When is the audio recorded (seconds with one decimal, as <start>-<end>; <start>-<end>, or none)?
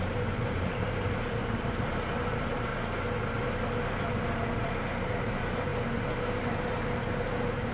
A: 2.7-3.8; 5.7-6.2